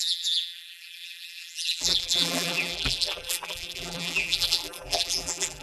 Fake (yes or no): yes